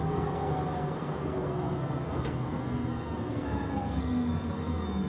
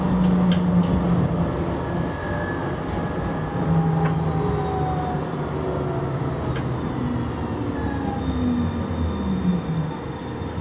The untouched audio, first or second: second